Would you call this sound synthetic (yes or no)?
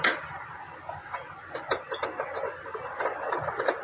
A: no